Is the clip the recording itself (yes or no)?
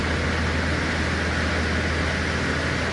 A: yes